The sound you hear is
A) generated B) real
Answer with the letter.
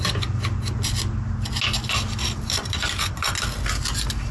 B